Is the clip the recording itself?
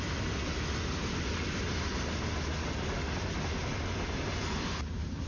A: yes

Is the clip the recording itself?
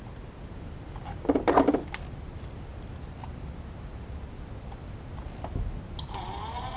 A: yes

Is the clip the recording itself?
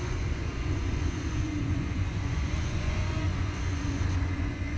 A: no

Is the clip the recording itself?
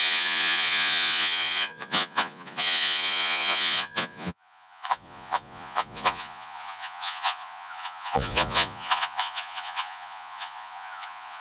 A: no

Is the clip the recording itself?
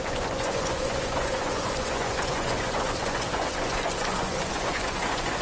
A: no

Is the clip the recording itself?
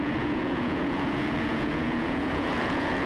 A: no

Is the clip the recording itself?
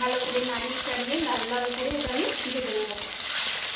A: yes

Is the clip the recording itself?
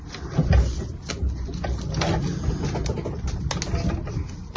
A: yes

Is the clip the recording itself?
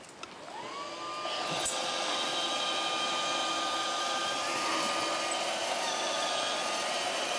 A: yes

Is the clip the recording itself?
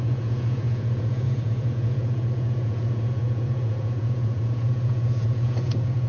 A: no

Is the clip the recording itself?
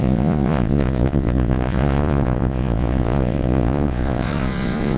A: no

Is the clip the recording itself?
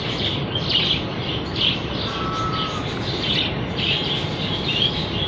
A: yes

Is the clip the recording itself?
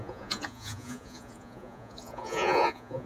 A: no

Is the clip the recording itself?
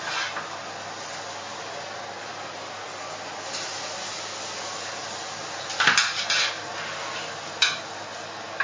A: yes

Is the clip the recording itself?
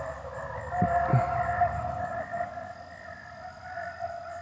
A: yes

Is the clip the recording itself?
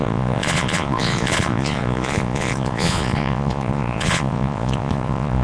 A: no